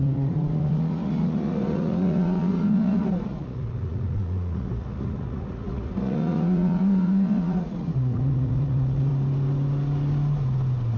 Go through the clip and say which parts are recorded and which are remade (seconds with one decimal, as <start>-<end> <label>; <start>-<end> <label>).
0.0-9.1 remade; 9.1-11.0 recorded